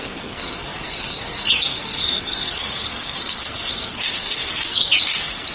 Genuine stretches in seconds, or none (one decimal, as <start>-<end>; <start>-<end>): none